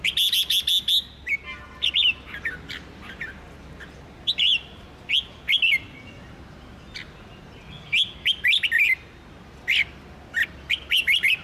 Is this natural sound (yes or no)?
yes